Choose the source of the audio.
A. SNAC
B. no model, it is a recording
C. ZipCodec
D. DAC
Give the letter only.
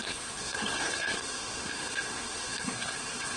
A